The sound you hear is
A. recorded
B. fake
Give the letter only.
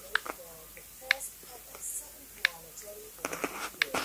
A